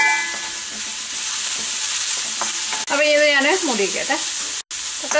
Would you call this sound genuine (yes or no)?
yes